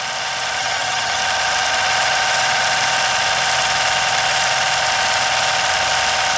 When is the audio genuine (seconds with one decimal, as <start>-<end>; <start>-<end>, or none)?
0.0-0.6; 1.2-6.4